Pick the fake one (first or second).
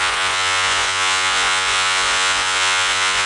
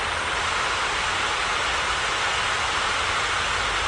first